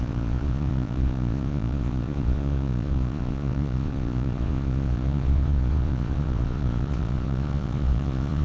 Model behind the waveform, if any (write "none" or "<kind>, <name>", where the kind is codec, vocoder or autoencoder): vocoder, Vocos